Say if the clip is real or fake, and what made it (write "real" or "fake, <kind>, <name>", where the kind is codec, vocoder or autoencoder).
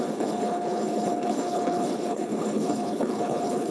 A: fake, codec, HILCodec